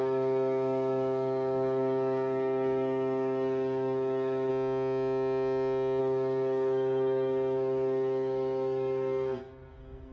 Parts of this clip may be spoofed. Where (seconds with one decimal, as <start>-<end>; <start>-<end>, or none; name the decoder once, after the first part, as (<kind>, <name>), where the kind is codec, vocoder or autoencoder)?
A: 0.0-4.5 (codec, SNAC); 6.0-10.1